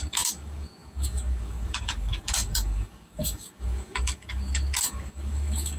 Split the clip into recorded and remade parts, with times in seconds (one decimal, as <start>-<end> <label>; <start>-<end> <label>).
0.0-5.8 remade